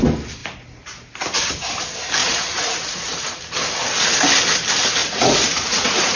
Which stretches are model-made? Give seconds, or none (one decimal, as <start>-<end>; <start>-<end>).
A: 2.2-3.4; 5.0-6.2